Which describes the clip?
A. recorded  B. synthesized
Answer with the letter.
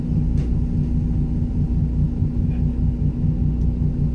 A